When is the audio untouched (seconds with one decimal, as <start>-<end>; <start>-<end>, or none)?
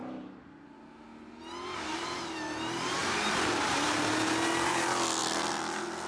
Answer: 0.0-6.1